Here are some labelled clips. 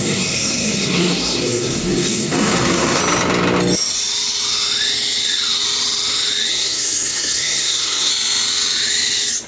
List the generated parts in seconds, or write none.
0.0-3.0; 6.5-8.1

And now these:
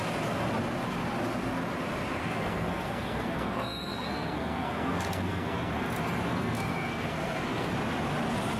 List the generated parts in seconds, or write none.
2.2-5.7; 6.3-7.7